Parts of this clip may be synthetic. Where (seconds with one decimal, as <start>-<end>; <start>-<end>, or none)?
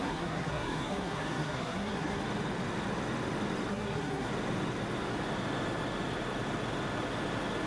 0.0-2.2; 3.7-4.3